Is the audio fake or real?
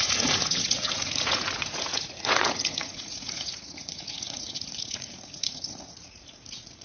fake